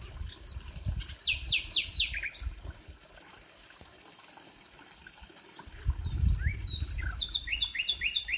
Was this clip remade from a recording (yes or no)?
no